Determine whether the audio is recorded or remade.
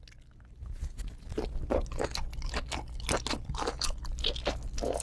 recorded